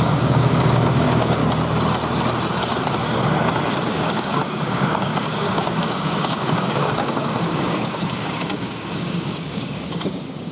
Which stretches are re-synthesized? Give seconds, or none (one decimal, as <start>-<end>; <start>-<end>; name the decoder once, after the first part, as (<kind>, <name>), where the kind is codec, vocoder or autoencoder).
0.0-1.4 (codec, DAC); 3.7-10.5